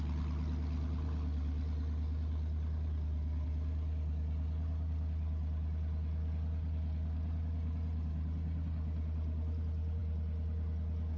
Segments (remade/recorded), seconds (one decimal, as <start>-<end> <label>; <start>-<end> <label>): 0.0-11.2 recorded